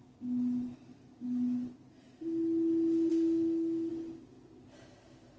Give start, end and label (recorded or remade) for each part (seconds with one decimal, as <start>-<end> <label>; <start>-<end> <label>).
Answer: 0.0-3.1 recorded; 3.1-3.9 remade; 3.9-5.4 recorded